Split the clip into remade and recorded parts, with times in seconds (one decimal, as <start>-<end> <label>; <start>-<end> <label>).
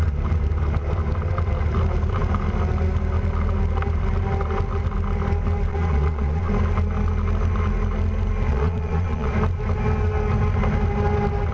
0.0-5.7 recorded; 5.7-6.5 remade; 6.5-8.5 recorded; 8.5-9.3 remade; 9.3-11.5 recorded